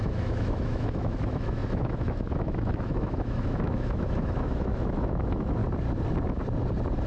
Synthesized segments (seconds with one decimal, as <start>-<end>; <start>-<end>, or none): 0.0-5.6